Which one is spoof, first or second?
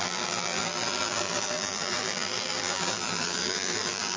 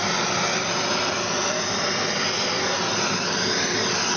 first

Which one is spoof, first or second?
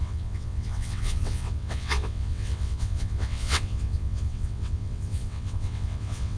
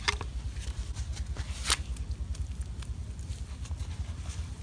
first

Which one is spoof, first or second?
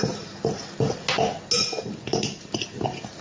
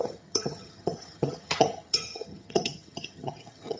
second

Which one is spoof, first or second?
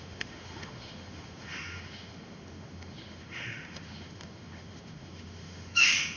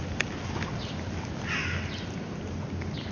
first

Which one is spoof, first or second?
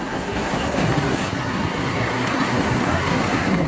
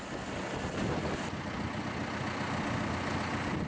first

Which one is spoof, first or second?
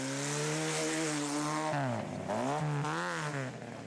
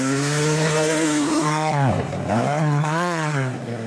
second